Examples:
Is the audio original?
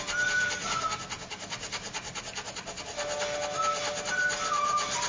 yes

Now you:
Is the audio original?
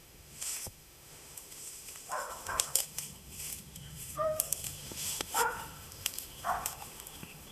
no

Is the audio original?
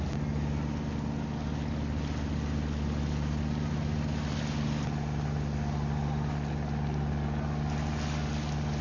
yes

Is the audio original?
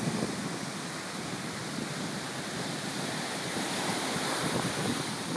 yes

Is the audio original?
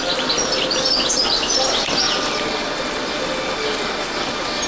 yes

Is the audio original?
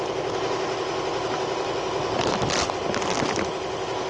yes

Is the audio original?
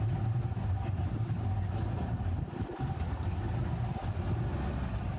yes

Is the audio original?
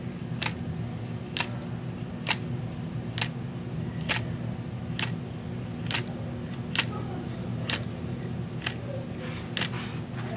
yes